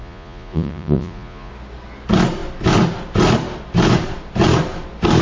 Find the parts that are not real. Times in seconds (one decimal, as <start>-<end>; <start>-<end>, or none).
0.0-1.5